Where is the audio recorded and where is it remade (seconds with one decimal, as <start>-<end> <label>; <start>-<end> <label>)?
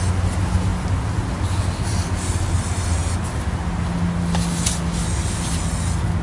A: 0.0-0.7 recorded; 0.7-1.2 remade; 1.2-6.2 recorded